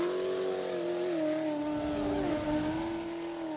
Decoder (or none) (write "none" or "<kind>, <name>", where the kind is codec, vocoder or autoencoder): none